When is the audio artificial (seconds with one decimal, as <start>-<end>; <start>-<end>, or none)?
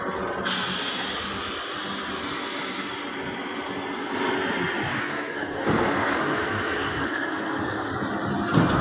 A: 4.9-7.9